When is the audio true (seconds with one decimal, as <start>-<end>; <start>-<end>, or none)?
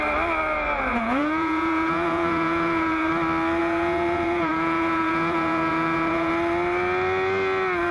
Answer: 0.0-0.9; 3.1-3.6; 6.3-7.9